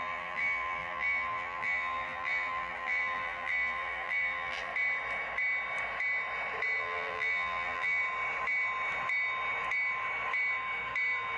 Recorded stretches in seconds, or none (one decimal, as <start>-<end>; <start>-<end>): 4.7-6.8; 8.0-11.4